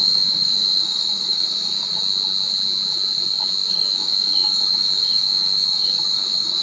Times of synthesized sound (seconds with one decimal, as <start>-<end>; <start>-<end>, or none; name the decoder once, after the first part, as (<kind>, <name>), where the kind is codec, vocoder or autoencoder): 0.0-2.0 (codec, DAC); 3.7-6.6